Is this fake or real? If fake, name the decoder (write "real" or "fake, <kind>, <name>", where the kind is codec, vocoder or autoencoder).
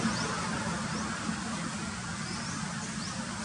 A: real